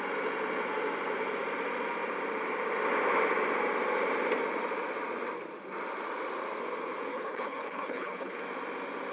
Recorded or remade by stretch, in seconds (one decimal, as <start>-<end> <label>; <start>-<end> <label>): 0.0-7.1 recorded; 7.1-8.4 remade; 8.4-9.1 recorded